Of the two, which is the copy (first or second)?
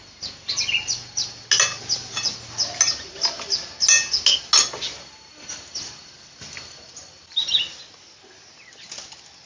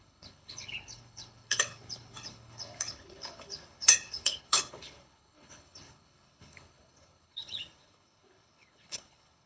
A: second